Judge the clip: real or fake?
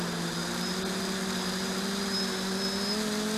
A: real